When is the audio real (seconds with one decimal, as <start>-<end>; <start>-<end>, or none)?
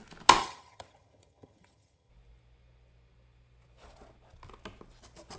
0.0-0.4; 2.1-5.4